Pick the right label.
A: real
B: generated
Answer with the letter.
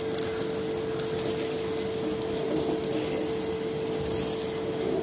A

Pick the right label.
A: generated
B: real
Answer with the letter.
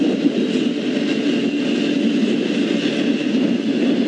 B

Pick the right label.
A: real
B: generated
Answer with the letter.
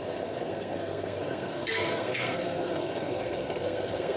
B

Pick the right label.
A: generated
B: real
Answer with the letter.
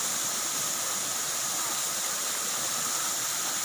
B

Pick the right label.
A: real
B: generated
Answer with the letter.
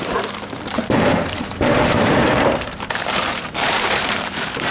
B